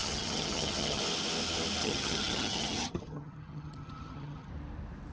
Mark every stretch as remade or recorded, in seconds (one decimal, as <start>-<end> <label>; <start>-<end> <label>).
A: 0.0-1.0 remade; 1.0-1.8 recorded; 1.8-4.5 remade; 4.5-5.1 recorded